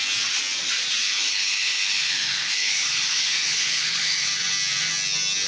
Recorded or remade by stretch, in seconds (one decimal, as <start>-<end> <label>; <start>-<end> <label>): 0.0-1.0 recorded; 1.0-4.3 remade; 4.3-5.5 recorded

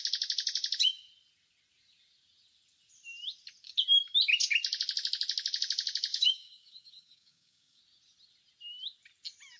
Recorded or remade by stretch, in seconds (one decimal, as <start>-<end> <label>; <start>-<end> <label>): 0.0-6.1 recorded; 6.1-7.8 remade; 7.8-9.6 recorded

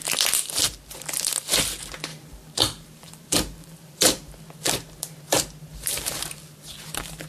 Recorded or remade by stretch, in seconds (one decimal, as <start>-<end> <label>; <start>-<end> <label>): 0.0-2.1 recorded; 2.1-4.4 remade; 4.4-5.7 recorded; 5.7-6.3 remade; 6.3-7.3 recorded

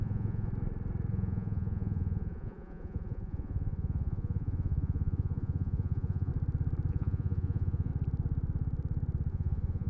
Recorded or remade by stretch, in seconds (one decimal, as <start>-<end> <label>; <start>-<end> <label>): 0.0-0.5 remade; 0.5-1.1 recorded; 1.1-6.3 remade; 6.3-6.9 recorded; 6.9-7.9 remade; 7.9-9.3 recorded; 9.3-9.9 remade

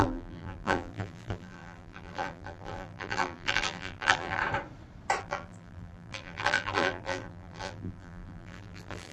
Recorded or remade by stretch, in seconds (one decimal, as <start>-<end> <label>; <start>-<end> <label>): 0.0-4.4 remade; 4.4-5.2 recorded; 5.2-9.1 remade

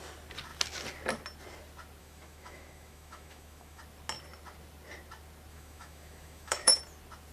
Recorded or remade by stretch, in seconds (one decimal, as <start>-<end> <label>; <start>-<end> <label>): 0.0-2.0 recorded; 2.0-3.8 remade; 3.8-5.5 recorded; 5.5-6.8 remade; 6.8-7.3 recorded

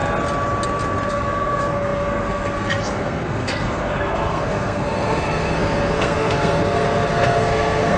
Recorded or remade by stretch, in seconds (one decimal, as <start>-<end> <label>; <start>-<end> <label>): 0.0-1.1 recorded; 1.1-8.0 remade